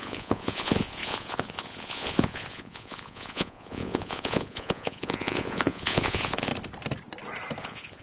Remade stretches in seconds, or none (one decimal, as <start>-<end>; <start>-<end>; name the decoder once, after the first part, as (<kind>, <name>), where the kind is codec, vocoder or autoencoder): 0.0-6.5 (vocoder, Vocos); 7.6-8.0